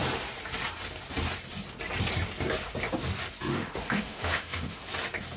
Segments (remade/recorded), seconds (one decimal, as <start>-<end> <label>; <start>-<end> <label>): 0.0-3.5 recorded; 3.5-4.8 remade; 4.8-5.4 recorded